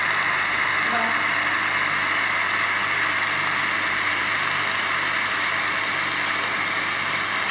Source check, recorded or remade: recorded